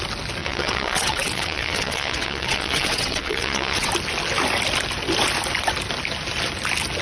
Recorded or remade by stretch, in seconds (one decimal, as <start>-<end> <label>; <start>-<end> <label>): 0.0-0.4 recorded; 0.4-3.9 remade; 3.9-7.0 recorded